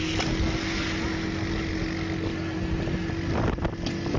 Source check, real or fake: real